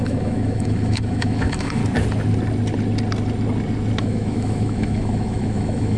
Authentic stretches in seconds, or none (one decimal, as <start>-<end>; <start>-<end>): 1.8-4.0